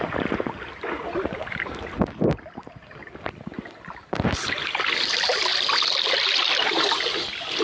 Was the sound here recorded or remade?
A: recorded